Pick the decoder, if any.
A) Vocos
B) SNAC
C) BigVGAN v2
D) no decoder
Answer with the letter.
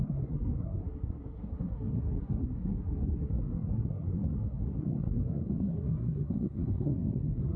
B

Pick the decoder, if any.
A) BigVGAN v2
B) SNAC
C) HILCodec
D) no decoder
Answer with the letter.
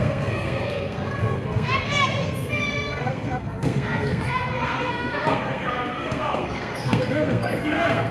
B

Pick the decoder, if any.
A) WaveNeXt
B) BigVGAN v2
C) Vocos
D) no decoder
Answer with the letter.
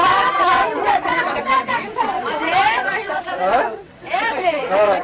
A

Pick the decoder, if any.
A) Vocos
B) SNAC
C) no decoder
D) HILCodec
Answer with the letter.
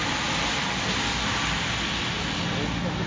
C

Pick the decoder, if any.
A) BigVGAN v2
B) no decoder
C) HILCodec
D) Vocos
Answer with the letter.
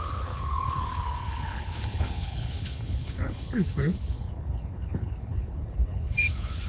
C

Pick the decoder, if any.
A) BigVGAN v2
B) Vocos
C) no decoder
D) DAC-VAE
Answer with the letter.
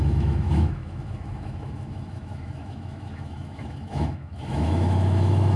D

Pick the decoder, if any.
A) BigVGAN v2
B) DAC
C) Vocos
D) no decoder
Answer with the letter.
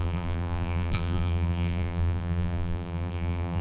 A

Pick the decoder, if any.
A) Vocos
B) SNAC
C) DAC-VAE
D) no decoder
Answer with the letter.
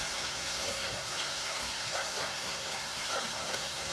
B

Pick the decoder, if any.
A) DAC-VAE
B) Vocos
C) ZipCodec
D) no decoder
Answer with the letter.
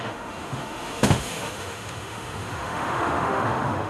A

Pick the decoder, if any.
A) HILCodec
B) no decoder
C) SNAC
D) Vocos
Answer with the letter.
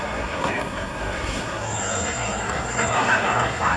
C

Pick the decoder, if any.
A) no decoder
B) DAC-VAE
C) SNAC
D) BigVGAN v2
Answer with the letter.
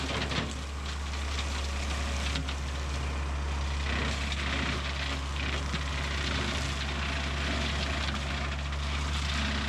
A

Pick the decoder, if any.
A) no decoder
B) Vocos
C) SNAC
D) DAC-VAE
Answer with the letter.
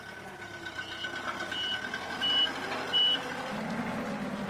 A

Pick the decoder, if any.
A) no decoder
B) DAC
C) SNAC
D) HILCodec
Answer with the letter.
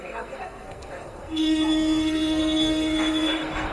C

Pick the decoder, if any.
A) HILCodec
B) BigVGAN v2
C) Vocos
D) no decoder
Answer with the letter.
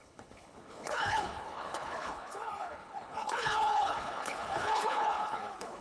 A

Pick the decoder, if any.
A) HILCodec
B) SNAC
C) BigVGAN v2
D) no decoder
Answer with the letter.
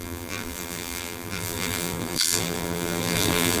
C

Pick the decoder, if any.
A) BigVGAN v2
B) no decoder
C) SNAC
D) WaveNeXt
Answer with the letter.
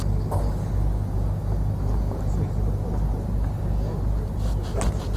B